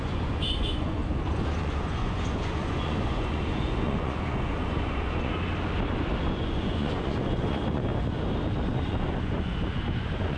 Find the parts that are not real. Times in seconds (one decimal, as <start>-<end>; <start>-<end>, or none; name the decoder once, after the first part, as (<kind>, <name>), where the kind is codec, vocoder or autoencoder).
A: 0.0-1.0 (vocoder, Vocos); 1.6-5.3; 6.2-7.9; 8.6-10.4